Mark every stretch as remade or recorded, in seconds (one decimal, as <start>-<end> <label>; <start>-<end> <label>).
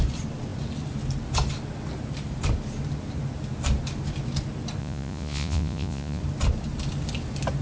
0.0-4.8 recorded; 4.8-6.2 remade; 6.2-7.6 recorded